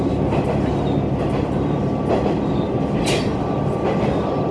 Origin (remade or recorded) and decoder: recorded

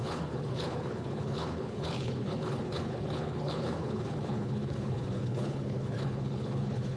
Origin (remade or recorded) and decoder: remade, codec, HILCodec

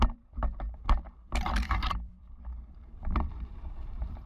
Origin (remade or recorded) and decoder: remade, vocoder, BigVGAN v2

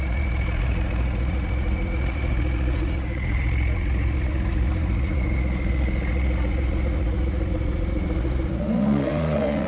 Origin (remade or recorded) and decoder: remade, vocoder, Vocos